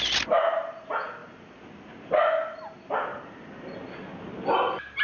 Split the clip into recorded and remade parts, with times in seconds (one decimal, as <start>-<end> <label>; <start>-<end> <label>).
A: 0.0-5.0 recorded